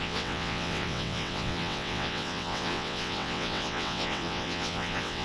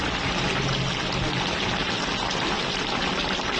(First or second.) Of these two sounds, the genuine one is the second